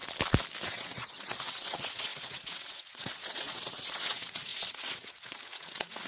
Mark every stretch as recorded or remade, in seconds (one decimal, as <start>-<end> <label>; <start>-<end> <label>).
0.0-0.7 recorded; 0.7-6.1 remade